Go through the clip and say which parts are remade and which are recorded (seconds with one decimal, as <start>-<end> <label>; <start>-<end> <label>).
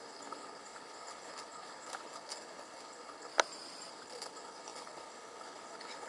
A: 0.0-3.3 remade; 3.3-3.9 recorded; 3.9-6.1 remade